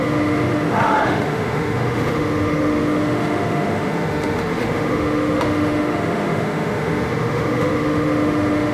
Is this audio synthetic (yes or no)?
yes